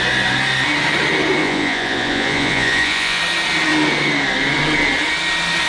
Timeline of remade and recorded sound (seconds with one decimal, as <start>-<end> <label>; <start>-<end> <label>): 0.0-1.4 recorded; 1.4-3.2 remade; 3.2-5.7 recorded